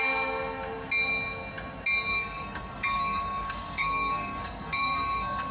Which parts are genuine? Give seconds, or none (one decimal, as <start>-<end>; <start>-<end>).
0.0-2.1